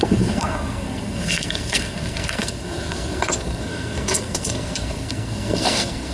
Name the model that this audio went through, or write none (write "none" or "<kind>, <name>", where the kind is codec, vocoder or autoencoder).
codec, SNAC